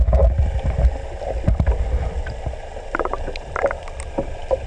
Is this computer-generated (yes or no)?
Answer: no